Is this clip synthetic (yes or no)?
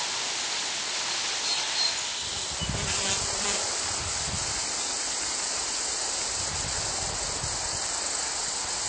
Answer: no